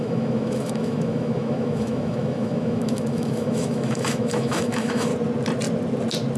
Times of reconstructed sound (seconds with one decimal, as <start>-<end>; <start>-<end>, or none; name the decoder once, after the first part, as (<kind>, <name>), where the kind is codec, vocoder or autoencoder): 0.0-5.1 (autoencoder, DAC-VAE)